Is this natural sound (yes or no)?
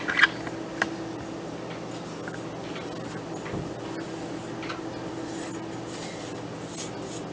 yes